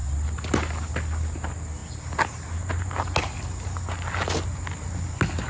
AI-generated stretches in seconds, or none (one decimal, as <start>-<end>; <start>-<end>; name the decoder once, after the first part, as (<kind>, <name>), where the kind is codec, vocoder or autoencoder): none